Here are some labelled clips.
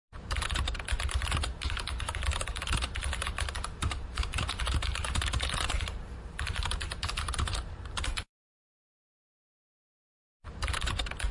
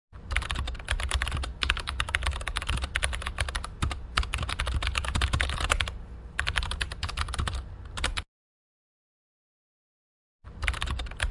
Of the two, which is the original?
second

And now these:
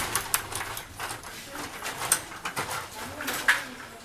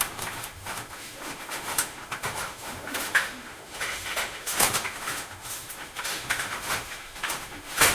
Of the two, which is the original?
first